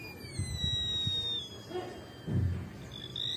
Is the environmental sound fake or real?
real